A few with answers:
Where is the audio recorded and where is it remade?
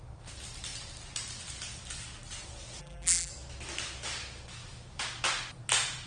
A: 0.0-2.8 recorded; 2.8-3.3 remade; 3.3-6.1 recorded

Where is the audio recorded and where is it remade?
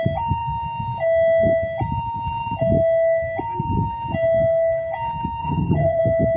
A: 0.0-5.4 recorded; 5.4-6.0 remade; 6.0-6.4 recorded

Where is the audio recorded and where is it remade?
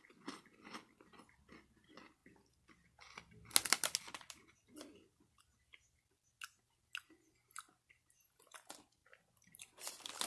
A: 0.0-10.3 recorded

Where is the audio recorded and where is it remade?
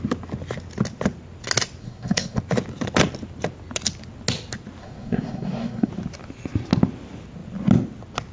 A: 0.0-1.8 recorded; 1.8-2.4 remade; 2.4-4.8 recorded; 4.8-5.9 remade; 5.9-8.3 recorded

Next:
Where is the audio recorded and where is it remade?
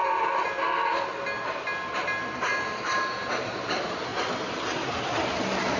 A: 0.0-4.1 recorded; 4.1-4.7 remade; 4.7-5.8 recorded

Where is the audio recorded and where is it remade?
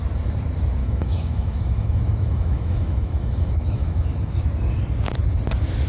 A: 0.0-0.8 recorded; 0.8-4.3 remade; 4.3-5.9 recorded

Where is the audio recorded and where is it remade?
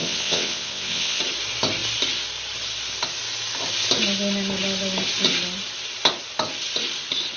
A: 0.0-1.2 remade; 1.2-7.4 recorded